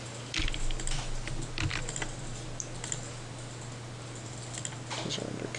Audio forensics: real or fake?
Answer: real